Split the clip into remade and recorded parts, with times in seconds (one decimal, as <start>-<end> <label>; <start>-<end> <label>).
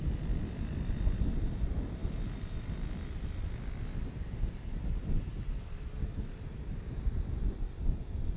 0.0-8.4 recorded